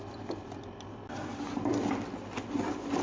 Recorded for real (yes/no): yes